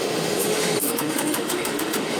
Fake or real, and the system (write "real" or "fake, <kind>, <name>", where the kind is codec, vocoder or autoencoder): fake, autoencoder, DAC-VAE